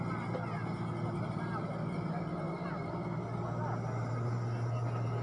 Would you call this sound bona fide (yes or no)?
yes